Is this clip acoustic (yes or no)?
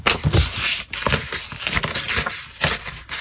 yes